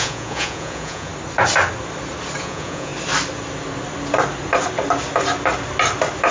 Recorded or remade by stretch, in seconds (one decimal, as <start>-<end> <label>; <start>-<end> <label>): 0.0-1.1 remade; 1.1-2.4 recorded; 2.4-2.9 remade; 2.9-6.3 recorded